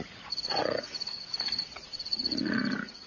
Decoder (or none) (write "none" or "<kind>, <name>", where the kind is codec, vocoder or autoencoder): vocoder, Vocos